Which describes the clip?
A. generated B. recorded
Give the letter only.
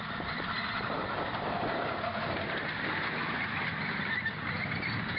B